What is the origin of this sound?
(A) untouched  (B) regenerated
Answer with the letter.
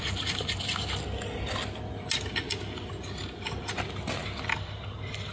A